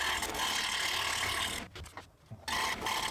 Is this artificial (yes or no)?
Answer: no